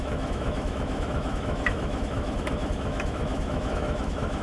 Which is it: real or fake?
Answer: fake